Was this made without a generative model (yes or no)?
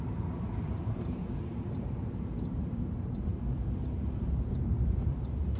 no